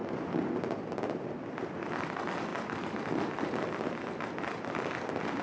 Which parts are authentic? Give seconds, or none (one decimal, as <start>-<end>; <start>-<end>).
0.0-5.4